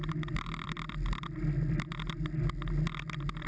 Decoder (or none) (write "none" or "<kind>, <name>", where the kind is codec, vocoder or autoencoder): none